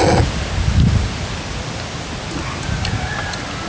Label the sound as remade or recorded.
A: recorded